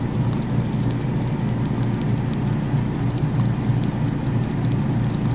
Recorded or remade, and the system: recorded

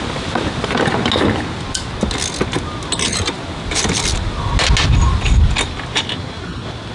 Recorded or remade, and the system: recorded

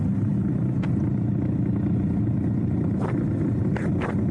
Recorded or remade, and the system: recorded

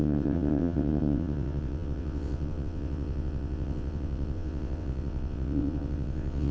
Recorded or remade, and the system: remade, vocoder, WaveNeXt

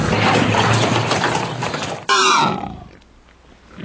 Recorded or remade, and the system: recorded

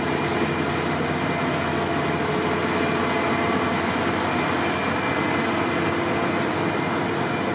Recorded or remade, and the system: recorded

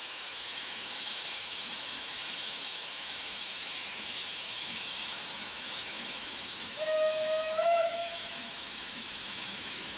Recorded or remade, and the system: remade, autoencoder, DAC-VAE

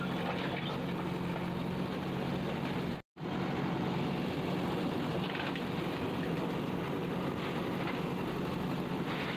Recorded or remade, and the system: recorded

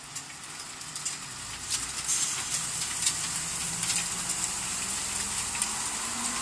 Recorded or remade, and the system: recorded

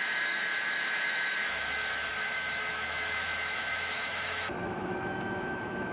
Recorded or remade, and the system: remade, autoencoder, DAC-VAE